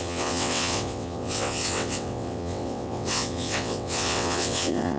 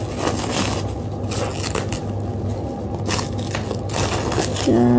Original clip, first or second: second